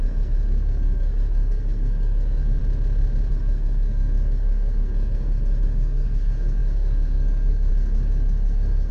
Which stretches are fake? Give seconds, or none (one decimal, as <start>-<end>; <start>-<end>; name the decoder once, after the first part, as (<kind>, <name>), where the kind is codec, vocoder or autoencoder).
0.0-2.6 (codec, SNAC); 3.3-8.9